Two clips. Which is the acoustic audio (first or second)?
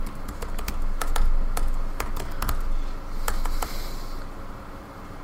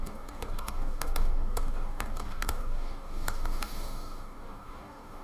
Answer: first